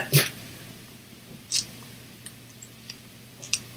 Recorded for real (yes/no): no